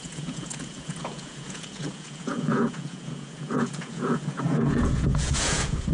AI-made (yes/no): yes